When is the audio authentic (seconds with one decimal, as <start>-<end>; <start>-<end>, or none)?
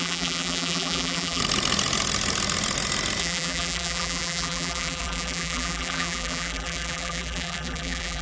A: 1.4-3.2